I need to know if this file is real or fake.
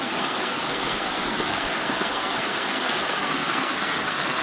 fake